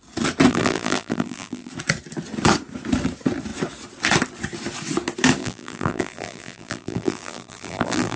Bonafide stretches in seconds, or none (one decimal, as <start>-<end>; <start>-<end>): 0.0-0.5; 1.7-5.4